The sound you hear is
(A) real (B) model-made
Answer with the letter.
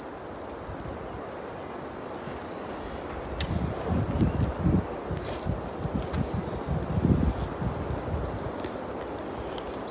A